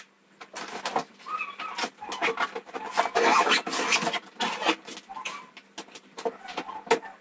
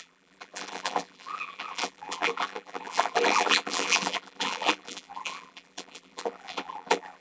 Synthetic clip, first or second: second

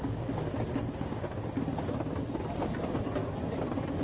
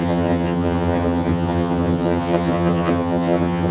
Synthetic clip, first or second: second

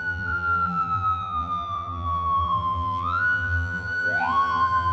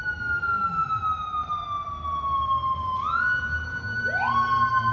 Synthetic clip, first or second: first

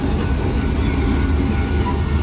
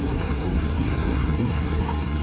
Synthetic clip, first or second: second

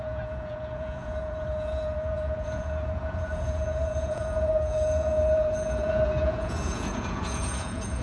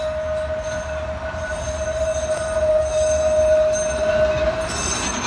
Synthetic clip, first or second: first